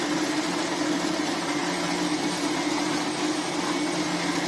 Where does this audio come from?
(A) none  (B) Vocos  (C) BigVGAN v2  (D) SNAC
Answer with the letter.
A